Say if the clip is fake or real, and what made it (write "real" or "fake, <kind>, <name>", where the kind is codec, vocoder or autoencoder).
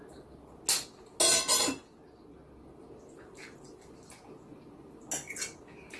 real